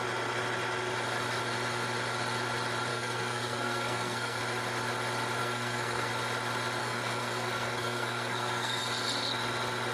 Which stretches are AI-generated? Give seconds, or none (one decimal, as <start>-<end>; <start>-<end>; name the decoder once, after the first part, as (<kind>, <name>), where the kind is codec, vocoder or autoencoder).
2.9-4.4 (codec, SNAC); 5.4-6.1; 6.8-8.8